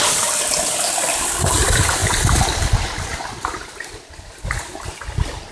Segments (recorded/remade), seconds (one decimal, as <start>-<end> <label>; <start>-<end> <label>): 0.0-5.5 recorded